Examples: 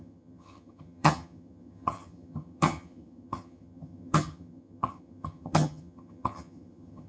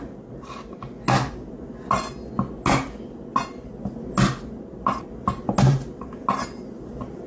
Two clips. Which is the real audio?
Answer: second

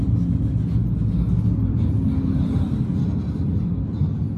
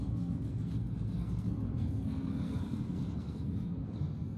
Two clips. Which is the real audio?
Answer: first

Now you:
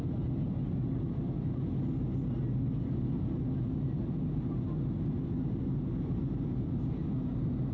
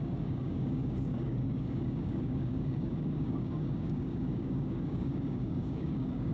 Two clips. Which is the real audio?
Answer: first